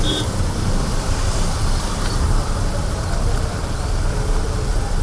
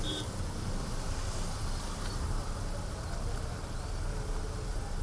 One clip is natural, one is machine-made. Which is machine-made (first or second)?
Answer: first